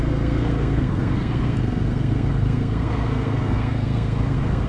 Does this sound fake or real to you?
fake